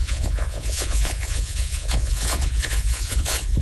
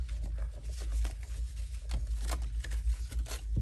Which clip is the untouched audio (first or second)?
second